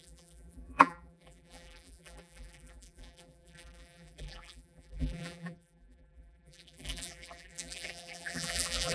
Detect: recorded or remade remade